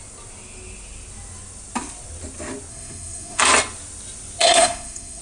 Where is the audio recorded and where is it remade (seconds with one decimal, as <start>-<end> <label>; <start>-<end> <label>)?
0.0-2.7 recorded; 2.7-3.4 remade; 3.4-4.4 recorded; 4.4-5.2 remade